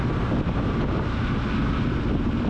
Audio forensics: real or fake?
real